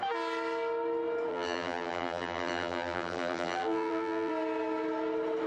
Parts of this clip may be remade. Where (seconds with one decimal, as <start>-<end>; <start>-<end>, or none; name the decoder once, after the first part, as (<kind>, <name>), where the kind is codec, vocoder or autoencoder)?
1.3-4.3 (vocoder, BigVGAN v2)